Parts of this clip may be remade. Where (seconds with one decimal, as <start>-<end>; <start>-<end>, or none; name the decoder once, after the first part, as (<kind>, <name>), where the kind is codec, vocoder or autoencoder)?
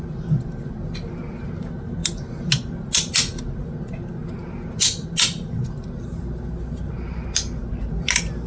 none